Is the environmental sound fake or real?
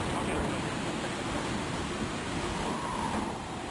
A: real